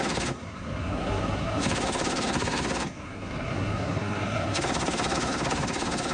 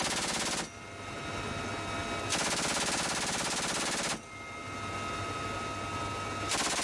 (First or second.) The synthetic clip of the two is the first